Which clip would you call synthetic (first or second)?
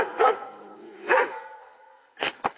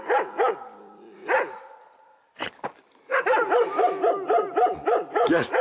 first